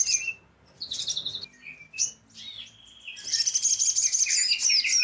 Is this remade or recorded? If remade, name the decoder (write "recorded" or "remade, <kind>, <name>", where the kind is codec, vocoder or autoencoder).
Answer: recorded